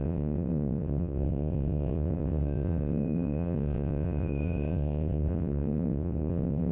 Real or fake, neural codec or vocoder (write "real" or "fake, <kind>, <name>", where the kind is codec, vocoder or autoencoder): fake, vocoder, WaveNeXt